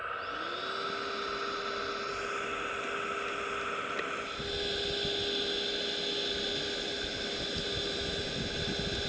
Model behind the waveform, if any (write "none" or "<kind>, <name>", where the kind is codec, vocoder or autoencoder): none